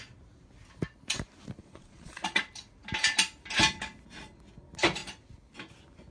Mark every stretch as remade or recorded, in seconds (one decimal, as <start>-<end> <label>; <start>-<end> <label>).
0.0-1.6 recorded; 1.6-2.4 remade; 2.4-6.1 recorded